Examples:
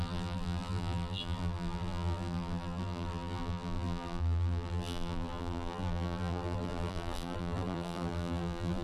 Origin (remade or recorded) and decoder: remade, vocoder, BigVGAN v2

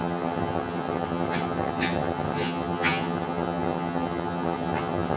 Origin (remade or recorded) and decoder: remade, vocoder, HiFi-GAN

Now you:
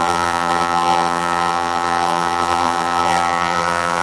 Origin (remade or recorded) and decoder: remade, vocoder, BigVGAN v2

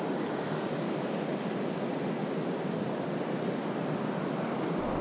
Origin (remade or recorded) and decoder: recorded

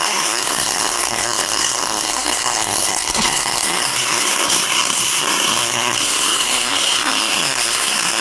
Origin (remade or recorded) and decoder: remade, codec, SNAC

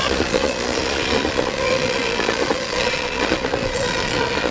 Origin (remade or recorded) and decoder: remade, vocoder, Vocos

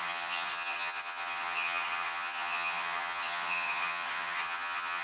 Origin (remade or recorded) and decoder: remade, vocoder, HiFi-GAN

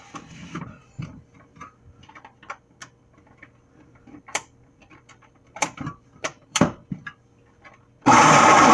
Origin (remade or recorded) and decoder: remade, vocoder, BigVGAN v2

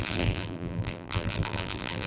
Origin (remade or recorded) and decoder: remade, vocoder, BigVGAN v2